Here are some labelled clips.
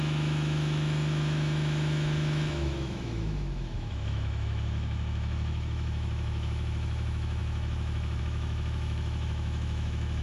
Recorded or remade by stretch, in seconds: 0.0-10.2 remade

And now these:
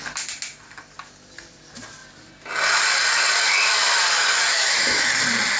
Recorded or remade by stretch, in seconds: 0.0-4.5 recorded; 4.5-5.1 remade; 5.1-5.6 recorded

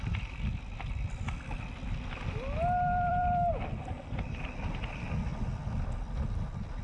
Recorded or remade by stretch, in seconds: 0.0-6.8 recorded